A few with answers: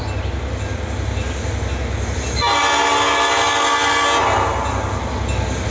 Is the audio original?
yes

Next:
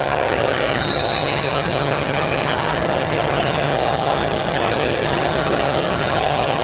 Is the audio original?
no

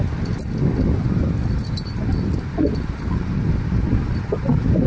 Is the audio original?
yes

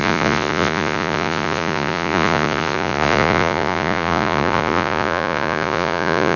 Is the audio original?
no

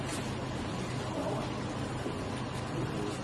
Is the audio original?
yes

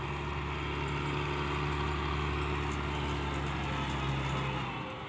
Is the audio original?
yes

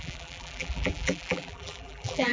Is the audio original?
no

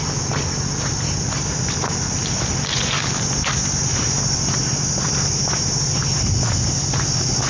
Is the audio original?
yes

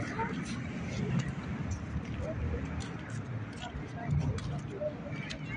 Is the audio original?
yes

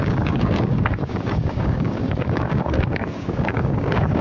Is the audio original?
no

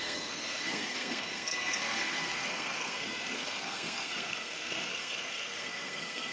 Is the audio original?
no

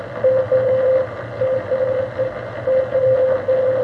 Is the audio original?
yes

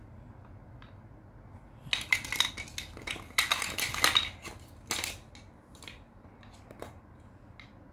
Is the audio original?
yes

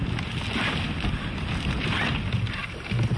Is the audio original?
yes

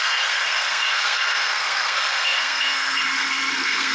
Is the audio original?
no